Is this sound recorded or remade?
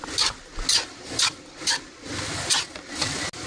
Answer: recorded